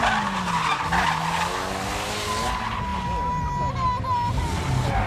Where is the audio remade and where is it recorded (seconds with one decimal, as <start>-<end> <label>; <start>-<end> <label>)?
0.0-5.1 recorded